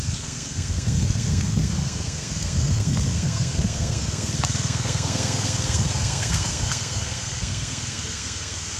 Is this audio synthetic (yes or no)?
yes